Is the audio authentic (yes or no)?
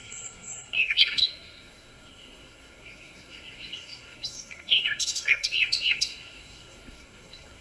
no